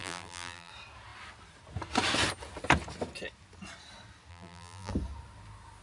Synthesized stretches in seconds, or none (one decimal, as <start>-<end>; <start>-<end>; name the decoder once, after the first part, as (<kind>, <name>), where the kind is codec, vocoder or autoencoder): 0.0-0.7 (vocoder, BigVGAN v2); 4.3-4.9